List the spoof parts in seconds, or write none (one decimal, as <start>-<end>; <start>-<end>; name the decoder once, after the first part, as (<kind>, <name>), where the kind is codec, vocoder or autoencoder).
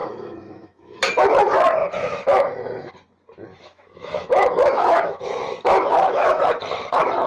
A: 0.0-1.4 (autoencoder, DAC-VAE); 1.8-2.9; 3.5-6.4